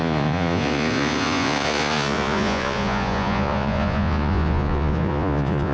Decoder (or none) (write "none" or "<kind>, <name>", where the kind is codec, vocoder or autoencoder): vocoder, Vocos